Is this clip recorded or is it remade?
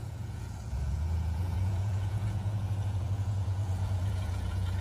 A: remade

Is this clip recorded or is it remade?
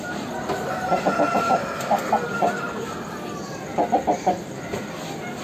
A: recorded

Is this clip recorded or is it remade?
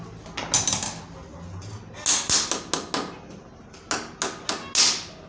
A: recorded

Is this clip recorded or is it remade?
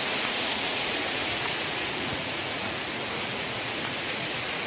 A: remade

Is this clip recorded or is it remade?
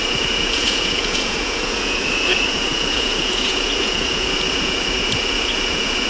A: remade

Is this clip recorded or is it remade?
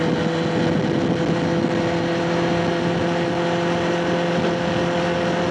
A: recorded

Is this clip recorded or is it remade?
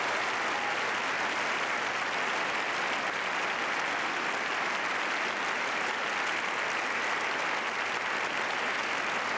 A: recorded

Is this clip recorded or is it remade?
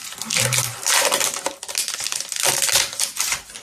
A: recorded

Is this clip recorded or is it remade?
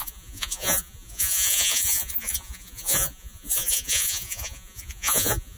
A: remade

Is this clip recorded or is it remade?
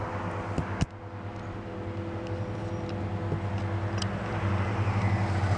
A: recorded